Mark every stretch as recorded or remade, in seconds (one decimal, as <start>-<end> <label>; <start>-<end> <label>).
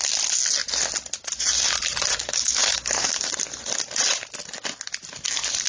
0.0-2.1 recorded; 2.1-3.3 remade; 3.3-5.7 recorded